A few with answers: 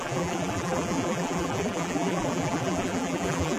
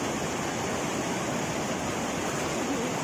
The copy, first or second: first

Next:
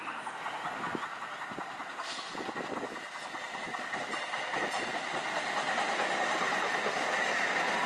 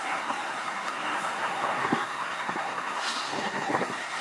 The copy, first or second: second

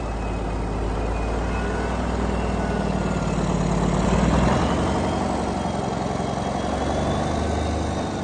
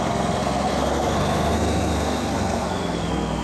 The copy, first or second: second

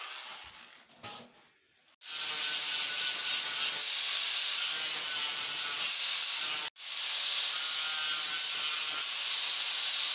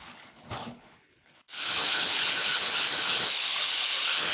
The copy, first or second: second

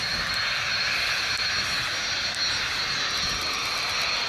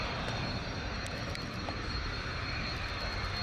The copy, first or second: second